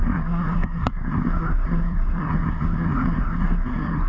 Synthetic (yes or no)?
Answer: yes